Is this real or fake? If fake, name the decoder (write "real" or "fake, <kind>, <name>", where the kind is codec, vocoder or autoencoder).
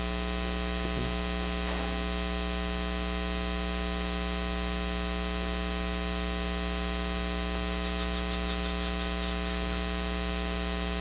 real